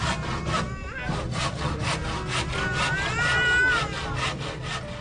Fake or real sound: real